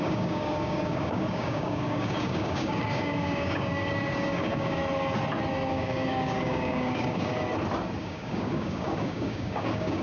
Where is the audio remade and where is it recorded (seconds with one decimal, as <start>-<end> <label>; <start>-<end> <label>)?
0.0-4.8 remade; 4.8-5.7 recorded; 5.7-7.3 remade; 7.3-8.0 recorded; 8.0-10.0 remade